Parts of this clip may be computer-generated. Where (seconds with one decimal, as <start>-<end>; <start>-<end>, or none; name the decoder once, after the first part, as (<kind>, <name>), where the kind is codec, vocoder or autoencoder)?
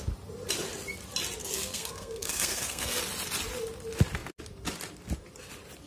1.4-3.0 (codec, SNAC)